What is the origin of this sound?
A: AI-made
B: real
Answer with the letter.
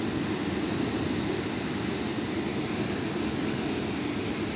B